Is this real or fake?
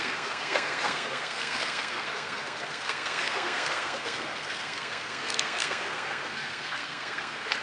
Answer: fake